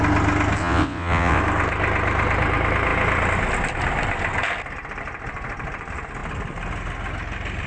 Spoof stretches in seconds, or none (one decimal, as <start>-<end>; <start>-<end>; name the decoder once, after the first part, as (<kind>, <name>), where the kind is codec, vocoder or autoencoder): 0.6-1.4 (vocoder, WaveNeXt)